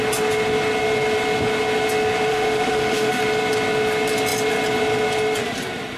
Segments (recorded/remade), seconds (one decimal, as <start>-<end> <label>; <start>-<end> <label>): 0.0-2.3 recorded; 2.3-3.2 remade; 3.2-6.0 recorded